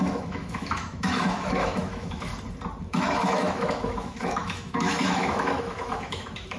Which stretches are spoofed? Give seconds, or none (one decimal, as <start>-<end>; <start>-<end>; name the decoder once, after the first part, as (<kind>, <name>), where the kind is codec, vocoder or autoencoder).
0.0-2.3 (autoencoder, DAC-VAE); 2.8-6.6

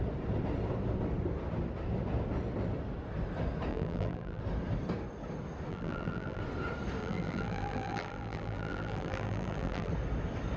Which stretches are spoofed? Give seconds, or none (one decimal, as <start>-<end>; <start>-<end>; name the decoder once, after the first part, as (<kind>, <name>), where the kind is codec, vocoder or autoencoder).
3.7-4.4 (vocoder, BigVGAN v2); 5.7-6.4; 7.0-9.9

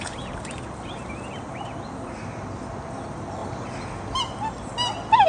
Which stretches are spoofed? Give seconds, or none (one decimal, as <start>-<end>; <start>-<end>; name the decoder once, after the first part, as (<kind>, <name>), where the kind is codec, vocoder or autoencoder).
none